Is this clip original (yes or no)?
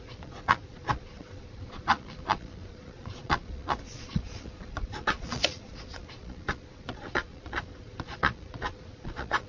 no